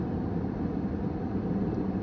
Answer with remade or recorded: remade